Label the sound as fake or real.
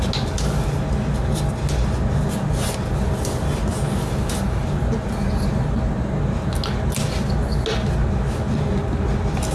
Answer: real